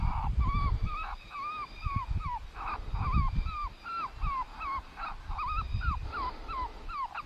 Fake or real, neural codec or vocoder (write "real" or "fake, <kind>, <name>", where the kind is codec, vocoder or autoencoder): real